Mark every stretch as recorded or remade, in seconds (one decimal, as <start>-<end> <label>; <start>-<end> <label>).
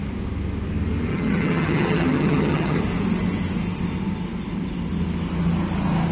0.0-1.1 recorded; 1.1-2.8 remade; 2.8-6.1 recorded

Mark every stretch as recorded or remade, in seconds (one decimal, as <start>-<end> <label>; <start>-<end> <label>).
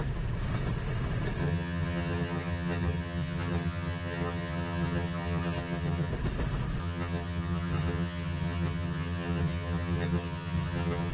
0.0-1.4 recorded; 1.4-6.1 remade; 6.1-6.8 recorded; 6.8-11.1 remade